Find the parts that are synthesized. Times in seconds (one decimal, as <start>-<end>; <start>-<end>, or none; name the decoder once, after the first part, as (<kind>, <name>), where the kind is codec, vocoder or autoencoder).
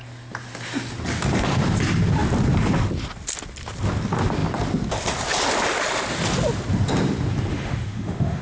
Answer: 7.5-8.4 (autoencoder, DAC-VAE)